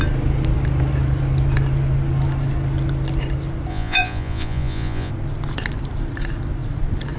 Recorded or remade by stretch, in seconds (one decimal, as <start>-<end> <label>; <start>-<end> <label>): 0.0-3.7 recorded; 3.7-5.1 remade; 5.1-7.2 recorded